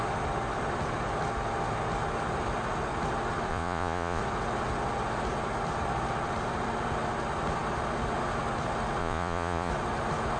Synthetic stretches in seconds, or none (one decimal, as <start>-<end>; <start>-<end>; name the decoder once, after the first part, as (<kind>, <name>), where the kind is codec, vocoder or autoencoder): 3.5-4.2 (vocoder, Vocos); 9.0-9.7